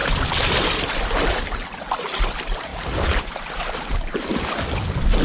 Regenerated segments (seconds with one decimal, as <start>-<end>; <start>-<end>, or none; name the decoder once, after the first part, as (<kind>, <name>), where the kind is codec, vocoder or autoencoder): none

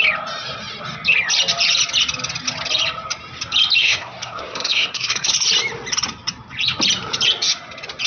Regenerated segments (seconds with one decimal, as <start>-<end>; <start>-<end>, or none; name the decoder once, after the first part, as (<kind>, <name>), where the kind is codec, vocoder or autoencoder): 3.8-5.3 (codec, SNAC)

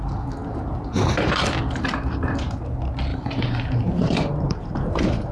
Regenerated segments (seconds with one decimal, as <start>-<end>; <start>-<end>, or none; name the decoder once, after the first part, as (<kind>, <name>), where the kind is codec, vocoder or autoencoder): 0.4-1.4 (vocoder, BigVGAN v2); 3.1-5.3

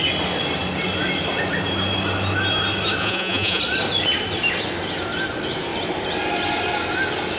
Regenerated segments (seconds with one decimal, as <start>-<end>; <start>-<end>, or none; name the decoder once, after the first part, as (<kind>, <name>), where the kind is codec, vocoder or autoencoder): 3.0-3.6 (vocoder, Vocos)